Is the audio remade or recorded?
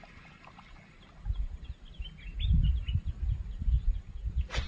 recorded